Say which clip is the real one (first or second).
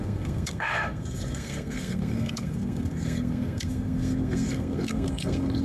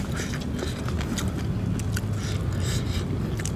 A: second